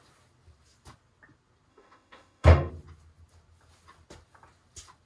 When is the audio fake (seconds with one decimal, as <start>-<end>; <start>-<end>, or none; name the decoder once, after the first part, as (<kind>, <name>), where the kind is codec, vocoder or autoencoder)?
1.7-2.7 (autoencoder, DAC-VAE)